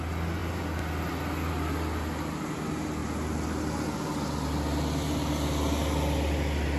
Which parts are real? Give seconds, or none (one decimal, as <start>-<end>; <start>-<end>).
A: 0.0-6.8